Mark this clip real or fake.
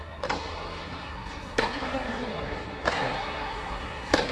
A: fake